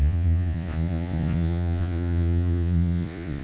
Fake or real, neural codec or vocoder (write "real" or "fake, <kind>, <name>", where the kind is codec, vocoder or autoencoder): fake, vocoder, Vocos